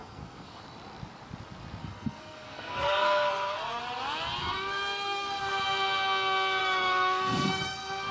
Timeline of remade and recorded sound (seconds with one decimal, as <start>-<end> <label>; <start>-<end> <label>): 0.0-0.6 remade; 0.6-1.8 recorded; 1.8-3.8 remade; 3.8-4.4 recorded; 4.4-5.4 remade; 5.4-6.6 recorded; 6.6-8.1 remade